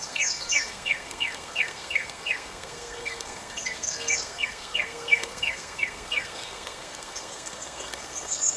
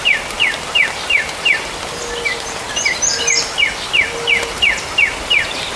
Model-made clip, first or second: first